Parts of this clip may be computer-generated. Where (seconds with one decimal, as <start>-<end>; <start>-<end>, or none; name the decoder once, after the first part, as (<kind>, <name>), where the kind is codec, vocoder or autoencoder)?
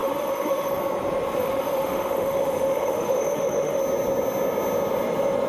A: 0.0-0.8 (autoencoder, DAC-VAE); 1.4-3.8